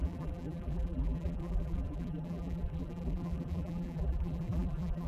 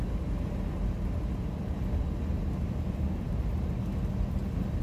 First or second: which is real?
second